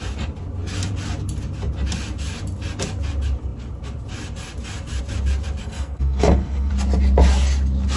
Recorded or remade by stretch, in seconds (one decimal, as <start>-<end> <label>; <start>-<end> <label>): 0.0-5.6 recorded; 5.6-6.7 remade; 6.7-8.0 recorded